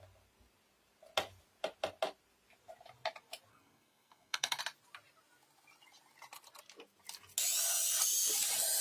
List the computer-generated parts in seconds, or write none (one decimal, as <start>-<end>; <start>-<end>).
3.5-4.6